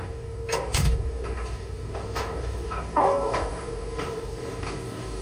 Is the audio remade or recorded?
remade